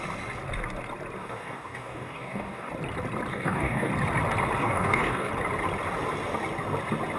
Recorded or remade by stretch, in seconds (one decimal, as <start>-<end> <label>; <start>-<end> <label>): 0.0-1.2 recorded; 1.2-2.7 remade; 2.7-3.3 recorded; 3.3-3.9 remade; 3.9-4.6 recorded; 4.6-5.3 remade; 5.3-7.2 recorded